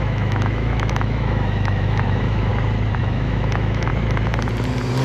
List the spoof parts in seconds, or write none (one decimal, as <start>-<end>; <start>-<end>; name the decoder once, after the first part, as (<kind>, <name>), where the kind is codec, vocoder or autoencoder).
0.0-2.5 (autoencoder, DAC-VAE); 3.0-3.9